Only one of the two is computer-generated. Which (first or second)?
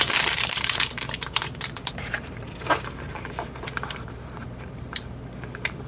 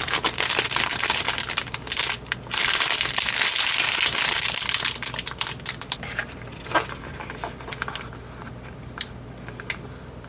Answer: first